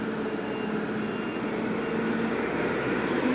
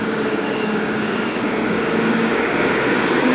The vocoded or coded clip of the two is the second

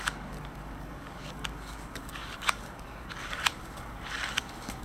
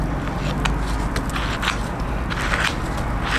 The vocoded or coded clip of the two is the first